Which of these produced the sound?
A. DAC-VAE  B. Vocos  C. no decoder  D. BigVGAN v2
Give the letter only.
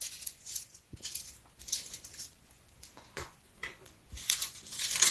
B